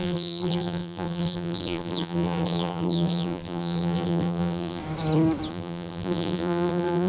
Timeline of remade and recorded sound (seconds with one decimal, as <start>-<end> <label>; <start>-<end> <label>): 0.0-4.8 remade; 4.8-5.5 recorded; 5.5-7.1 remade